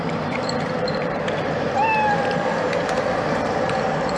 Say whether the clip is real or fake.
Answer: fake